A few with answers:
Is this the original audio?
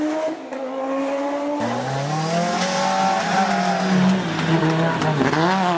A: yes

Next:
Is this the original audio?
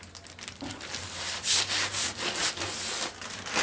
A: yes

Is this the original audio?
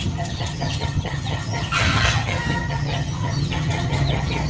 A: no